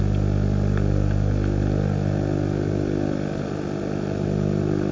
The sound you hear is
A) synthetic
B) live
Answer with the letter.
B